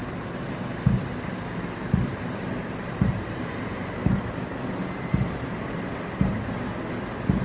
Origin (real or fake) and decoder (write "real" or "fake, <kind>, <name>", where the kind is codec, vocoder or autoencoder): real